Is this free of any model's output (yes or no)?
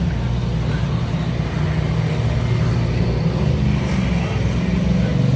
yes